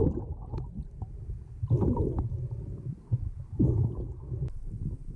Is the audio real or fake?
real